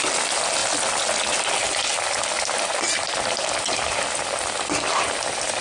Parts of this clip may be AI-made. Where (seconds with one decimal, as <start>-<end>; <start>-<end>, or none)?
none